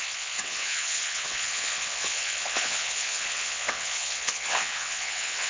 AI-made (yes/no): yes